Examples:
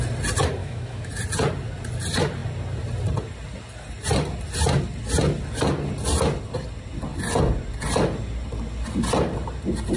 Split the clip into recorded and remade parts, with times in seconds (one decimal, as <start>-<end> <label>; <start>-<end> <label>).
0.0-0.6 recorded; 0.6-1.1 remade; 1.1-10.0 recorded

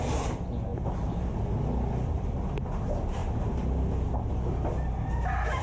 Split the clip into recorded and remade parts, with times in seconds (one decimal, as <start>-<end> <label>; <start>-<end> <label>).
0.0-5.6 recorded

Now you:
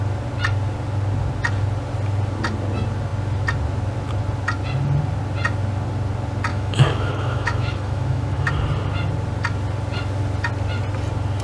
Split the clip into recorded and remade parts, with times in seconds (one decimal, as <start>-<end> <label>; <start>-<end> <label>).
0.0-6.5 recorded; 6.5-8.5 remade; 8.5-11.4 recorded